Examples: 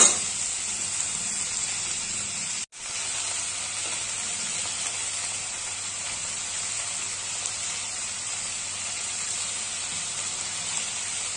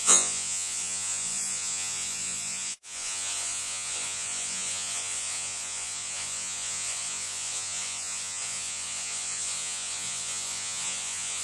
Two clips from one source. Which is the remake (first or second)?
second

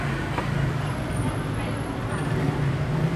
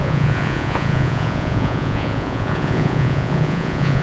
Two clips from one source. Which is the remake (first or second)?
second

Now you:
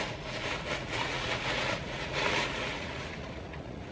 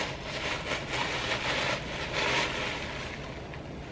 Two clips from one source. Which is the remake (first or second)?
first